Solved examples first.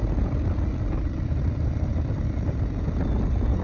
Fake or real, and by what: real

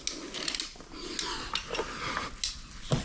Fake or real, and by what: real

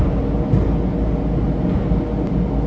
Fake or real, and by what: real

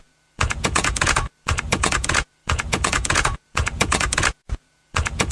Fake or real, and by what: fake, vocoder, Vocos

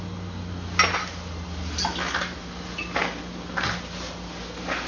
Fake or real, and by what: real